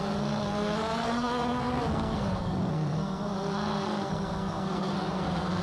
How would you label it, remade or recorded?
remade